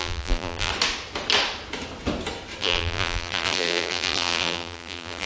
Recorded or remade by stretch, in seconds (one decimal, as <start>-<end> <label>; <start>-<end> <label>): 0.0-0.7 remade; 0.7-2.6 recorded; 2.6-5.3 remade